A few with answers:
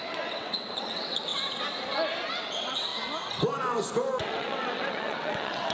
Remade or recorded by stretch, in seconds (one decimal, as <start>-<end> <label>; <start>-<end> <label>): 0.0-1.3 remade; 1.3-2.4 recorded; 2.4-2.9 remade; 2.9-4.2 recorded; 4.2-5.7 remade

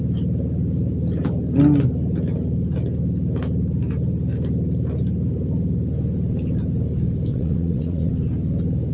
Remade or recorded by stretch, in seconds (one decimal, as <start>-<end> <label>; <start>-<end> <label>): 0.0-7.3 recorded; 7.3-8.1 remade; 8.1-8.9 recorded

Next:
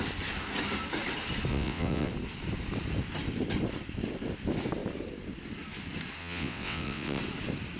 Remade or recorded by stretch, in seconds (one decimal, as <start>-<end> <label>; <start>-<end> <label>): 0.0-1.5 recorded; 1.5-2.1 remade; 2.1-6.2 recorded; 6.2-7.2 remade; 7.2-7.8 recorded

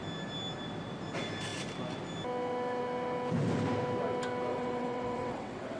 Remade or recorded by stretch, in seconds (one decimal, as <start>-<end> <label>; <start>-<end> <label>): 0.0-4.5 recorded; 4.5-5.8 remade

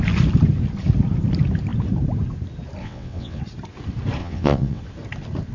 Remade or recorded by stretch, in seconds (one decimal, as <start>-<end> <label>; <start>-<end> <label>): 0.0-2.8 recorded; 2.8-3.4 remade; 3.4-4.2 recorded; 4.2-4.8 remade; 4.8-5.5 recorded

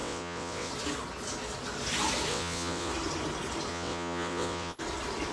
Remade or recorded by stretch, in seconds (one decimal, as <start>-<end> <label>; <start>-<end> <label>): 0.0-0.7 remade; 0.7-2.3 recorded; 2.3-2.9 remade; 2.9-3.7 recorded; 3.7-4.8 remade; 4.8-5.3 recorded